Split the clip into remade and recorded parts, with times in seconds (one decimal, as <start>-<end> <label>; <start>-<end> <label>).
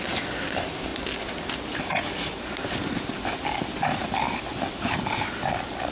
0.0-5.9 recorded